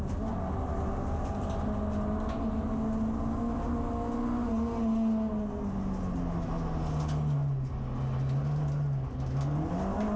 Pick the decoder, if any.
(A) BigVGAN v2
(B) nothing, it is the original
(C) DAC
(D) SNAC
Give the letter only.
B